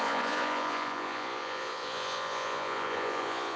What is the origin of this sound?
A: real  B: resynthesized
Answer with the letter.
B